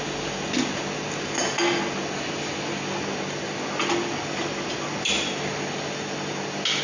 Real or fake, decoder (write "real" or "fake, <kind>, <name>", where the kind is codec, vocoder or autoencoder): real